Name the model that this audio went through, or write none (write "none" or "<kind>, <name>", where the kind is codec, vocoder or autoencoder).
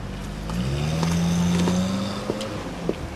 none